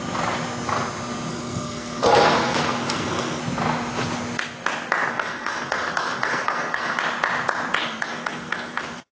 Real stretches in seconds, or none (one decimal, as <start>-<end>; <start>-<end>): 0.0-1.3; 3.4-5.1; 7.0-7.8